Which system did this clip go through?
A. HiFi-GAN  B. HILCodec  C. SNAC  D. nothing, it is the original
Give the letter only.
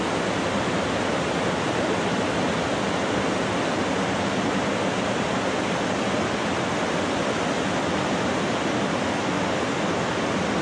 D